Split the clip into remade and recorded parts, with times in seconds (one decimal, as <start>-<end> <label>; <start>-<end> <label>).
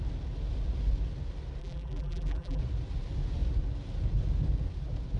0.0-1.6 recorded; 1.6-2.6 remade; 2.6-5.2 recorded